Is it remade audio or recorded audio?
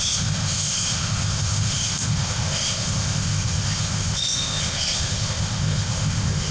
remade